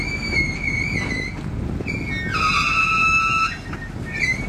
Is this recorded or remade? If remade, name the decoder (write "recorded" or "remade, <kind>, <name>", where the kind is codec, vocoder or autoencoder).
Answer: recorded